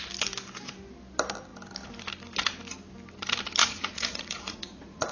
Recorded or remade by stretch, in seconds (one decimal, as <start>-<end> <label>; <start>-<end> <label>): 0.0-3.6 recorded; 3.6-5.1 remade